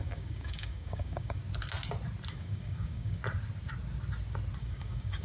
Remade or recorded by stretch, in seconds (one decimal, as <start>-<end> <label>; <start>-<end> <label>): 0.0-1.4 remade; 1.4-2.3 recorded; 2.3-3.2 remade; 3.2-4.6 recorded; 4.6-5.2 remade